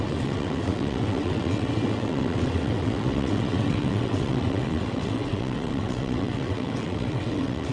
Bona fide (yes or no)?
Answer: no